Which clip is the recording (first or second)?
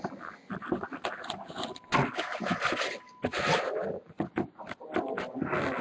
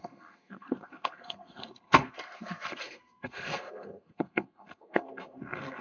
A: first